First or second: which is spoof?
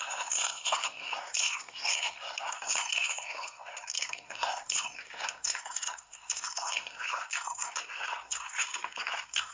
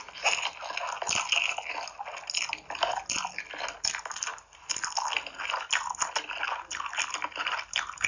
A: first